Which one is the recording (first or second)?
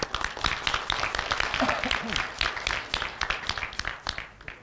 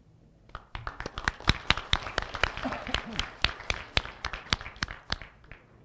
first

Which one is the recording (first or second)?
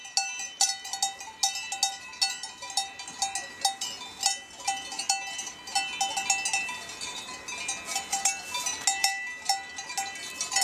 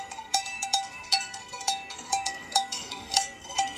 first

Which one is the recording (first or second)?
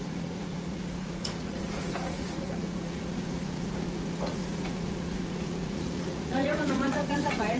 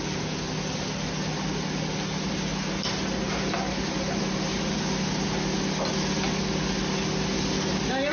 second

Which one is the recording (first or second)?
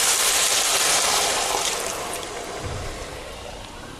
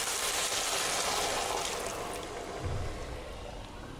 second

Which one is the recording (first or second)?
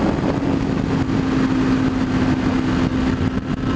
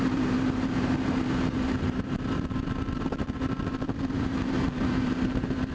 first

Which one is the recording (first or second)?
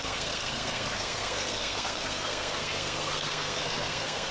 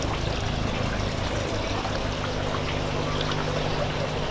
second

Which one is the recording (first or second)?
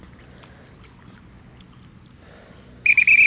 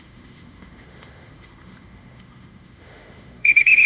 first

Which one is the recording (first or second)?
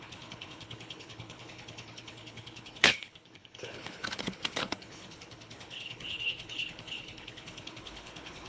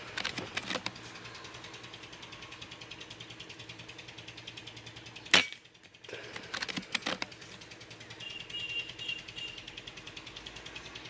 second